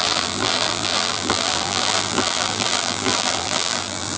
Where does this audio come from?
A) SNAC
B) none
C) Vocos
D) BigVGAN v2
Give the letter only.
D